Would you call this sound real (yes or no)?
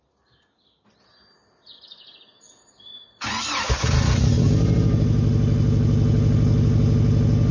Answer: yes